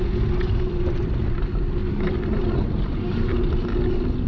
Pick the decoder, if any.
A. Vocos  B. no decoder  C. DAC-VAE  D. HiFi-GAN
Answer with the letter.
B